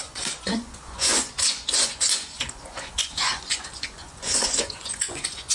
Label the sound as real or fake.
fake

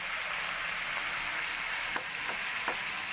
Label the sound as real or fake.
real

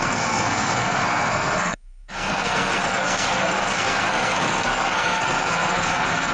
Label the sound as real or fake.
fake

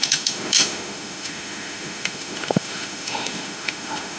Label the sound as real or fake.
fake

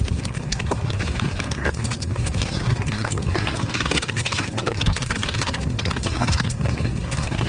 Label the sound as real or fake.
fake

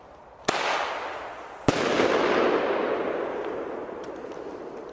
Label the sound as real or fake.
real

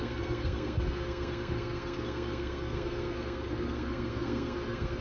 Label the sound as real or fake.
fake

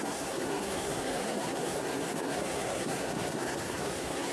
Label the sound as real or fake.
fake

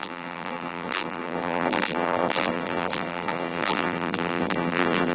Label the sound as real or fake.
fake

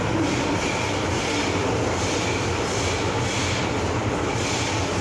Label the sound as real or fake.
real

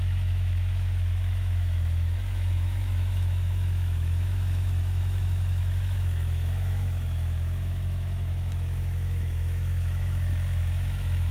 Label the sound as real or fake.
fake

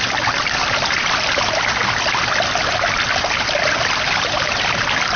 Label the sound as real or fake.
real